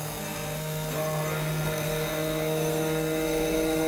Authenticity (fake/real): fake